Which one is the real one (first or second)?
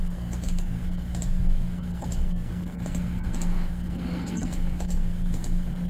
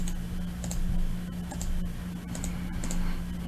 second